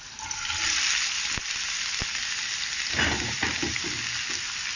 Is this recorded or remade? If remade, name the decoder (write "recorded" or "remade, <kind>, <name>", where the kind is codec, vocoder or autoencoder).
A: recorded